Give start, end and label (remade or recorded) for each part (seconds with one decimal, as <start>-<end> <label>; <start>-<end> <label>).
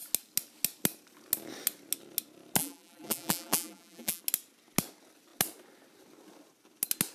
0.0-2.6 recorded; 2.6-4.2 remade; 4.2-7.1 recorded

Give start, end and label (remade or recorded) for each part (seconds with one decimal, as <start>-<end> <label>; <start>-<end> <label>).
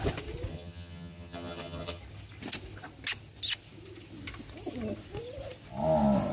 0.0-0.5 recorded; 0.5-2.0 remade; 2.0-6.3 recorded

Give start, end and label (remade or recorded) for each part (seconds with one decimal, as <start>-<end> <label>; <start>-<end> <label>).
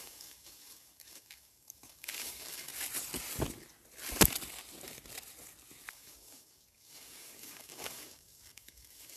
0.0-2.7 remade; 2.7-5.9 recorded; 5.9-9.2 remade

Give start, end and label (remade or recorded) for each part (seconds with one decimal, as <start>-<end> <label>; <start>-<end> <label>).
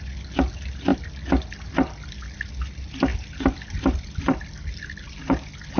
0.0-5.8 recorded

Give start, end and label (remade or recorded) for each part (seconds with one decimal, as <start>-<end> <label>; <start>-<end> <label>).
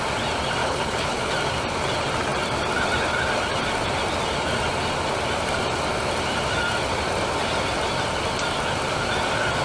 0.0-0.6 recorded; 0.6-1.3 remade; 1.3-9.6 recorded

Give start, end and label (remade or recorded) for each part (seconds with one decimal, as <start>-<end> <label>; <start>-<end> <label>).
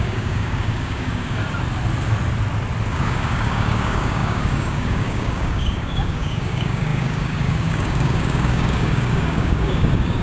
0.0-1.4 remade; 1.4-2.9 recorded; 2.9-10.2 remade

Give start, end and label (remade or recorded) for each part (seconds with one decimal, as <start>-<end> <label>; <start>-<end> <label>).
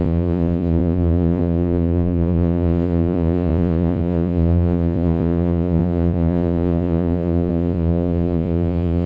0.0-9.1 remade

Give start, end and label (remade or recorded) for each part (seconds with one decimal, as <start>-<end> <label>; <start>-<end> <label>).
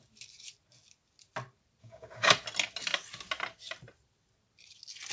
0.0-1.8 recorded; 1.8-2.3 remade; 2.3-5.1 recorded